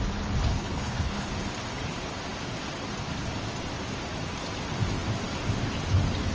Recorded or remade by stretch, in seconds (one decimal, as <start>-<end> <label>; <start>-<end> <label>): 0.0-0.4 recorded; 0.4-1.3 remade; 1.3-6.3 recorded